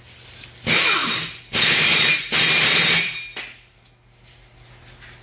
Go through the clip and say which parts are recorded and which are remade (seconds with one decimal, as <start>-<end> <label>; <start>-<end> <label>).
0.0-1.0 recorded; 1.0-3.1 remade; 3.1-5.2 recorded